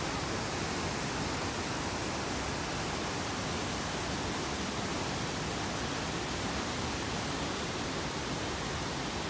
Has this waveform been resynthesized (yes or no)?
no